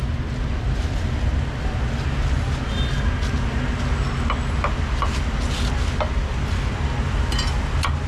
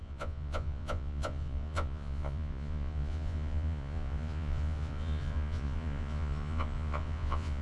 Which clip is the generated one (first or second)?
second